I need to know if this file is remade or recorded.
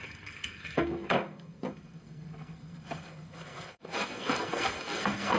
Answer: remade